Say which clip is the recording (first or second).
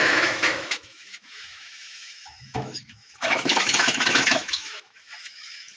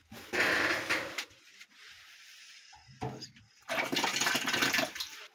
second